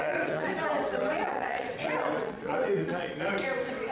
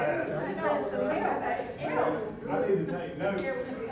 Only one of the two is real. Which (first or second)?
second